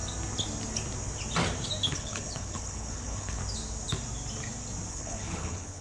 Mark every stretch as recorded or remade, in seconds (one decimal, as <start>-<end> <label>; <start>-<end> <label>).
0.0-1.9 recorded; 1.9-3.4 remade; 3.4-4.9 recorded; 4.9-5.8 remade